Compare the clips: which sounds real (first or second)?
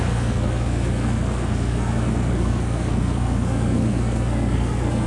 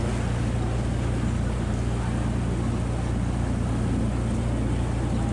second